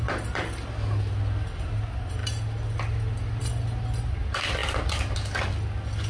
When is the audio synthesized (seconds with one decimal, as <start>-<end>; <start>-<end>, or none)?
none